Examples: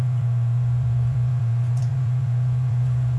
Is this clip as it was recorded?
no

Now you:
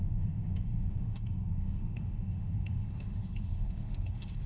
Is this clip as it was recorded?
no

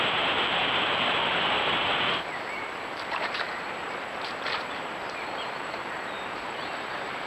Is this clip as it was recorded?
no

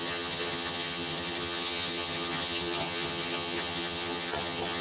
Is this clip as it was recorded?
no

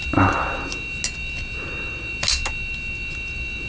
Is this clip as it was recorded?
yes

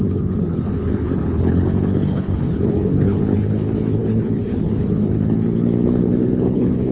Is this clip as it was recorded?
no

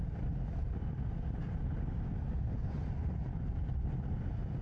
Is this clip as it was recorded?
yes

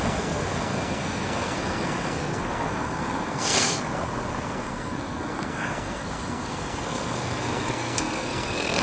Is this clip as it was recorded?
no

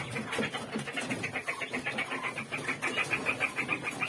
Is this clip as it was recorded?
yes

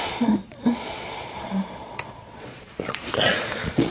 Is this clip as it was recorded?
no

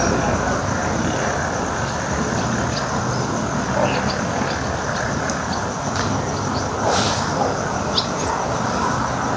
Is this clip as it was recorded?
yes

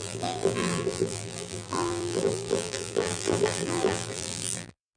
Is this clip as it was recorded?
no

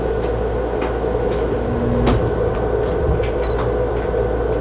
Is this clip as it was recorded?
yes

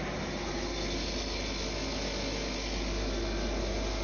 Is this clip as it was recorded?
yes